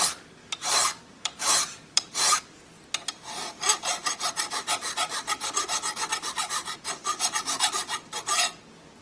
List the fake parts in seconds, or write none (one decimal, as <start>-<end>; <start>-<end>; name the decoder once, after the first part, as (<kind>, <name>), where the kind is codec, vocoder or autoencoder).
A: 0.4-2.4 (vocoder, BigVGAN v2); 4.0-8.4